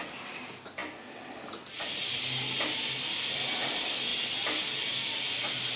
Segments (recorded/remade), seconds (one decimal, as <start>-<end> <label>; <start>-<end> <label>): 0.0-5.8 recorded